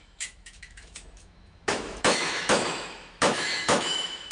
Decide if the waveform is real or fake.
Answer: fake